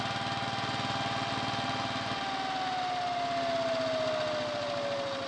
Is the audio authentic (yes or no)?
yes